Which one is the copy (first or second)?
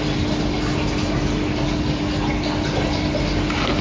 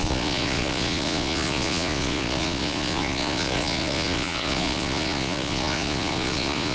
second